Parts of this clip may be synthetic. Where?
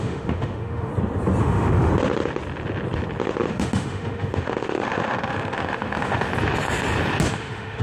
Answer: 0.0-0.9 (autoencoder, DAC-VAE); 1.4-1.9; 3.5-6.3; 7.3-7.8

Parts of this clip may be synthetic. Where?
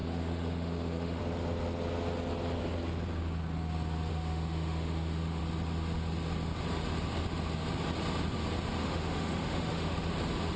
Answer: 0.0-1.2 (autoencoder, DAC-VAE); 4.1-5.4; 8.8-10.1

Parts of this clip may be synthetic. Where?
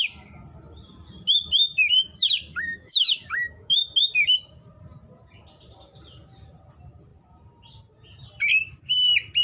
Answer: 2.5-3.8 (autoencoder, DAC-VAE)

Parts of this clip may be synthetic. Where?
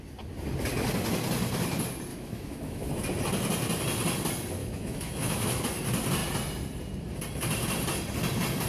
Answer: 2.1-2.9 (autoencoder, DAC-VAE); 4.6-5.6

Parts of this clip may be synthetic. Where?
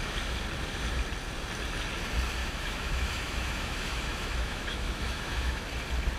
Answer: 2.4-5.6 (autoencoder, DAC-VAE)